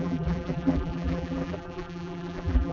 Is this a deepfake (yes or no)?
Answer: yes